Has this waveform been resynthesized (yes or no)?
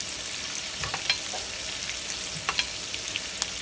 no